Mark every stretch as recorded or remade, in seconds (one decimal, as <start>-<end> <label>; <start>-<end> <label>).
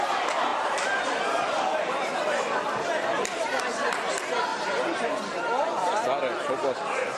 0.0-0.5 recorded; 0.5-3.6 remade; 3.6-4.5 recorded; 4.5-5.0 remade; 5.0-5.8 recorded; 5.8-6.8 remade; 6.8-7.2 recorded